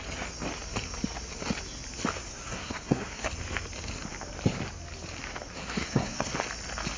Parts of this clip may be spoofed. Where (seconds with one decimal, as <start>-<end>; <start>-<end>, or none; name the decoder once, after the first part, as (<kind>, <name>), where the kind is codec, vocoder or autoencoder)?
2.3-3.3 (codec, SNAC); 5.5-6.3